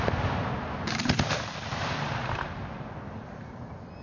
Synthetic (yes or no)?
no